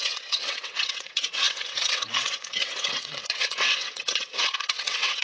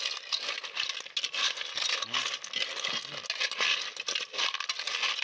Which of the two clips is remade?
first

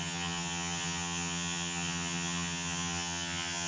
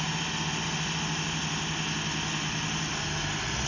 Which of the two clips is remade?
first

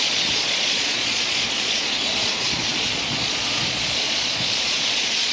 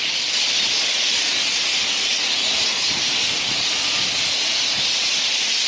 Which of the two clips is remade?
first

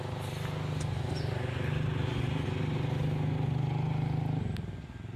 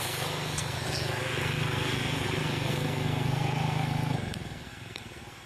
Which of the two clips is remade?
second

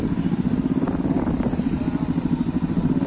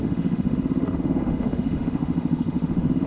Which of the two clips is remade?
second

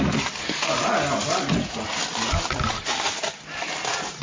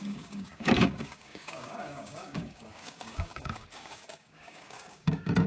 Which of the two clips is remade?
second